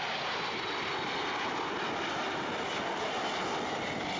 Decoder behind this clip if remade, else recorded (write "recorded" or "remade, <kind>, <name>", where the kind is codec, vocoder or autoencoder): recorded